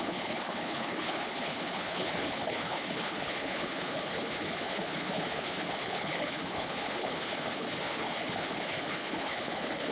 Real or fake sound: fake